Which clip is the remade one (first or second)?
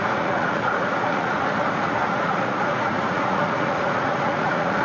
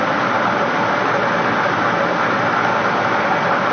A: first